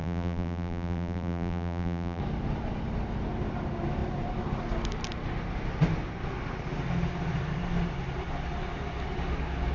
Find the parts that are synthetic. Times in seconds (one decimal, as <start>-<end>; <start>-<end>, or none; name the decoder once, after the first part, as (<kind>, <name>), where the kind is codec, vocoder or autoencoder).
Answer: 0.0-2.2 (vocoder, BigVGAN v2)